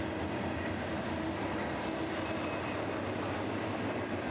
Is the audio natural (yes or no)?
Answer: yes